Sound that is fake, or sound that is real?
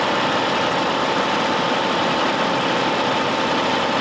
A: real